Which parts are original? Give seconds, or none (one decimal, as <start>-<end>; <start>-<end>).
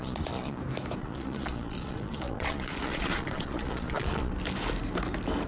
0.6-1.0; 4.3-5.5